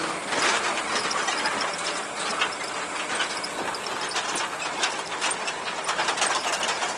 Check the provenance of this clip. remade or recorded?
recorded